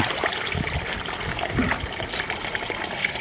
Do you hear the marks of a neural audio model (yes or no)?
no